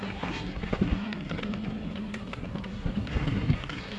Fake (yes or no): yes